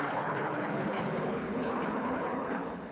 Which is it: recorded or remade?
remade